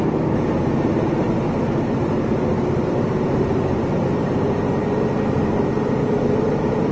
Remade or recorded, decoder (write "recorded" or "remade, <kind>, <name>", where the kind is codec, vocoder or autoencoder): remade, vocoder, BigVGAN v2